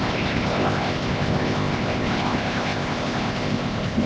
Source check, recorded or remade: remade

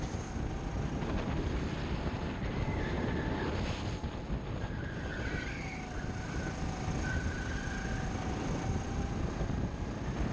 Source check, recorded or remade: recorded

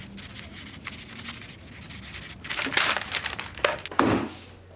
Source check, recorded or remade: recorded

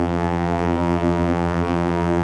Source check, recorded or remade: remade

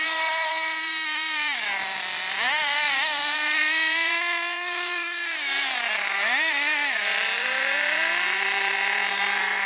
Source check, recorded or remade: remade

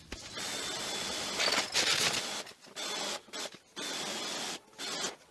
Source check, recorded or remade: recorded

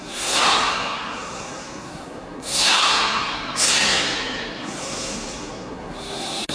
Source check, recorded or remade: remade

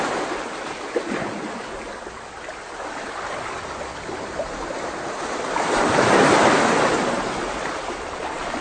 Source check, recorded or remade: recorded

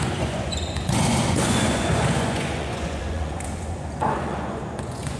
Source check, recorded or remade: remade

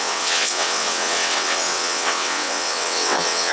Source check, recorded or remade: remade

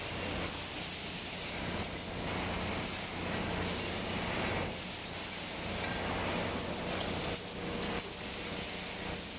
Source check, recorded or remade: recorded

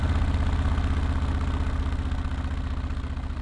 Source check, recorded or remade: recorded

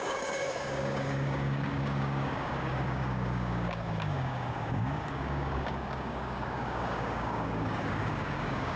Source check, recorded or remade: remade